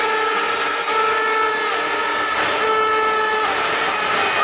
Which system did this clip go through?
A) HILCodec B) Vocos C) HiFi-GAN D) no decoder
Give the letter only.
D